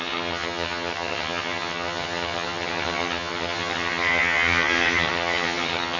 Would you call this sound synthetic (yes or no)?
yes